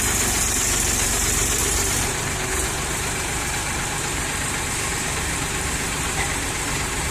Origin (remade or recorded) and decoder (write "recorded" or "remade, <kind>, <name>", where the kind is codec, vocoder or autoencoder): remade, vocoder, BigVGAN v2